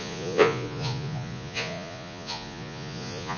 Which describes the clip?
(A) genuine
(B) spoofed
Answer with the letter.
B